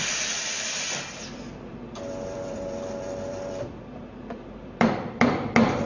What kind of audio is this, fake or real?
fake